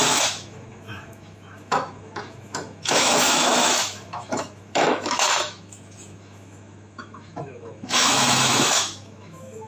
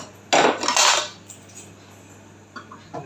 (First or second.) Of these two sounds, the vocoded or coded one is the first